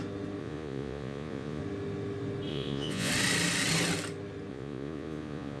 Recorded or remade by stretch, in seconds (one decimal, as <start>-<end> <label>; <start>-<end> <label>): 0.0-0.4 recorded; 0.4-1.6 remade; 1.6-2.5 recorded; 2.5-3.1 remade; 3.1-4.5 recorded; 4.5-5.6 remade